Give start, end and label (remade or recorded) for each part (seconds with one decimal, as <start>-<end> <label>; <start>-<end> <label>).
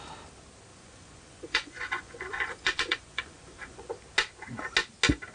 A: 0.0-0.7 recorded; 0.7-3.9 remade; 3.9-5.3 recorded